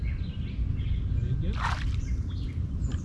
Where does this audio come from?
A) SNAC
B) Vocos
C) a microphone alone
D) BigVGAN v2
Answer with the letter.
C